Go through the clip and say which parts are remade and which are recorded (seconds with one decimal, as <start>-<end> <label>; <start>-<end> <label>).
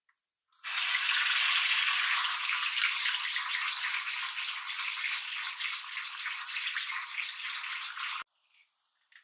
0.0-9.2 recorded